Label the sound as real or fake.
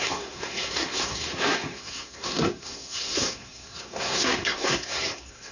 fake